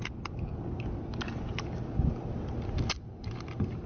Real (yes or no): yes